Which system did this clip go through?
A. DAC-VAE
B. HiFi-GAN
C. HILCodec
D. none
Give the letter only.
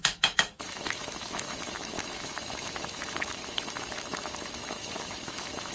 A